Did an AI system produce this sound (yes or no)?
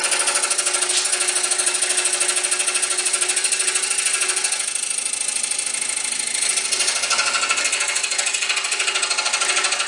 no